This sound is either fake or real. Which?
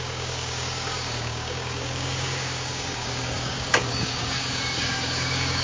fake